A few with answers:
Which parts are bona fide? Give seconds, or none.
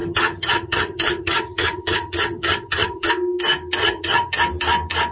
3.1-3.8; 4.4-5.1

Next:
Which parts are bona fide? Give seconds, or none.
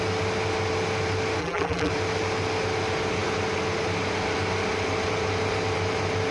0.0-1.4; 1.9-6.3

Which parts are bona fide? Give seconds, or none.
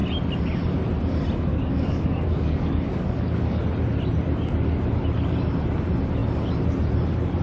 0.0-1.5; 3.6-7.4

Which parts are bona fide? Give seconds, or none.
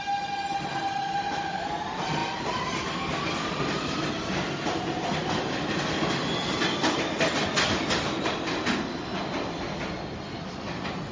0.0-11.1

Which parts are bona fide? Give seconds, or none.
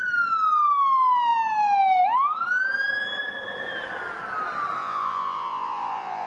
0.0-4.8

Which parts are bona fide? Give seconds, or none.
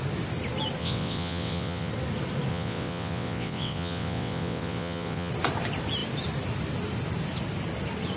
0.0-0.8; 1.9-2.5; 5.3-8.2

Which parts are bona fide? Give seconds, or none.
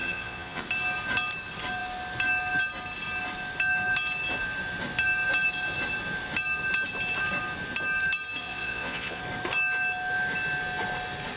0.6-8.4; 9.2-11.4